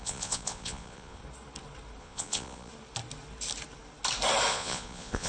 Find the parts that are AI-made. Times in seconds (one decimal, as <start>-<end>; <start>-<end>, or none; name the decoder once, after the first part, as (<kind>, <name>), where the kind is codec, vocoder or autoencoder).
0.0-1.2 (vocoder, Vocos); 2.0-2.7; 4.5-5.3